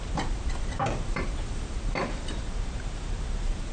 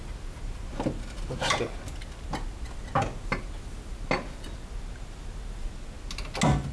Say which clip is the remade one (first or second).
first